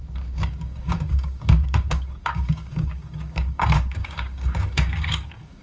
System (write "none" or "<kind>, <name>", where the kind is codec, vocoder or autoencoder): codec, DAC